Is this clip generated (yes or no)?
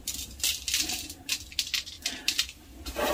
no